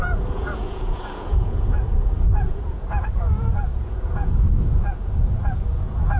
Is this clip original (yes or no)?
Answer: no